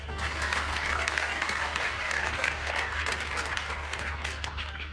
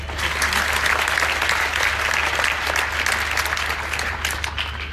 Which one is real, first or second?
second